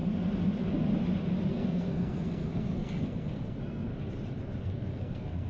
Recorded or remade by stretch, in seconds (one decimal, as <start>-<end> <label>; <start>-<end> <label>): 0.0-1.5 recorded; 1.5-3.9 remade; 3.9-4.6 recorded; 4.6-5.5 remade